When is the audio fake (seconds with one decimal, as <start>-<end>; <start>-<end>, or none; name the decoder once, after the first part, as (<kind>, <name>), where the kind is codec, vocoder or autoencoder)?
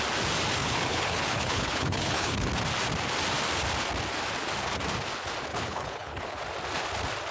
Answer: 0.6-2.5 (codec, HILCodec); 5.5-6.4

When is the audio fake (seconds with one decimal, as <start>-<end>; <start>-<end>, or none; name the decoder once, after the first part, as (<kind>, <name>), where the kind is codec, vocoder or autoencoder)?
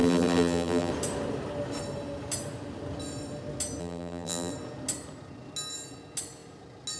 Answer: 0.0-0.9 (vocoder, BigVGAN v2); 3.8-4.5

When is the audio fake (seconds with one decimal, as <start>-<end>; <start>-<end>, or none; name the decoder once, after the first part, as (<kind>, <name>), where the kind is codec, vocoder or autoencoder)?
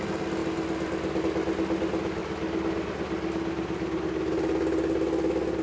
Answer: none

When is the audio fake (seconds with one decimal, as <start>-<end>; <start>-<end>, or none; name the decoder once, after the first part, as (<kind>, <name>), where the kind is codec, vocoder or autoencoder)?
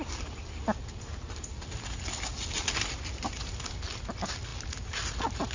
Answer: none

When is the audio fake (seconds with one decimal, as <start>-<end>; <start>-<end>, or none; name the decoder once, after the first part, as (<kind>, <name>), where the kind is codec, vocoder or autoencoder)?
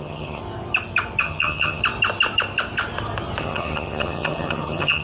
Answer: 0.0-0.4 (vocoder, HiFi-GAN); 1.2-1.8; 3.4-5.0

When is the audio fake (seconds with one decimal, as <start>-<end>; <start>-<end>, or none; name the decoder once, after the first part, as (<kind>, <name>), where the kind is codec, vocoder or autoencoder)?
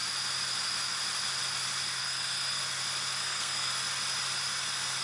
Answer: 2.0-2.6 (codec, SNAC); 3.2-3.7